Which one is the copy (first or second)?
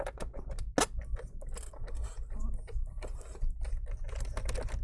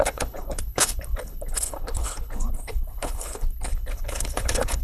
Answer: second